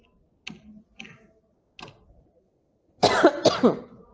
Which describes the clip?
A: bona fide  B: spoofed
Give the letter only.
A